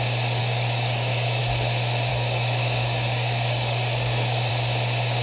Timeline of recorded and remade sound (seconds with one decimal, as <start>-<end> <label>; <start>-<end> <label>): 0.0-0.4 recorded; 0.4-1.4 remade; 1.4-2.1 recorded; 2.1-4.5 remade; 4.5-5.2 recorded